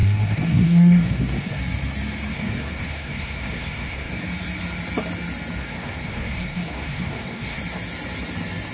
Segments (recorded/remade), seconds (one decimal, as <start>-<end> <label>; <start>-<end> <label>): 0.0-1.6 remade; 1.6-2.3 recorded; 2.3-4.1 remade; 4.1-5.6 recorded; 5.6-7.6 remade; 7.6-8.7 recorded